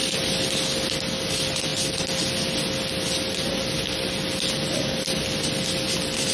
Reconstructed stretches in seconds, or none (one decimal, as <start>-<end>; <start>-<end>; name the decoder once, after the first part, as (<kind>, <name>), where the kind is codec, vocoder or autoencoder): none